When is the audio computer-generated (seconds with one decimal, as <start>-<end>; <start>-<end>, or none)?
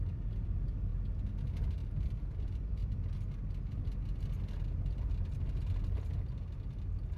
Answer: none